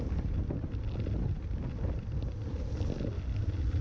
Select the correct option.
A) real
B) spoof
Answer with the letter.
A